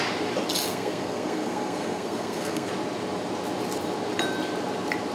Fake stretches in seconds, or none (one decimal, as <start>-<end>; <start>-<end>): 0.7-2.7